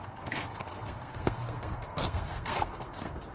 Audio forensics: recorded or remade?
remade